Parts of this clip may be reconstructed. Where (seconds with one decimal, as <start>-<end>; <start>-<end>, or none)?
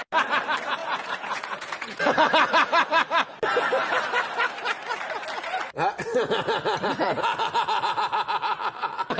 0.8-2.0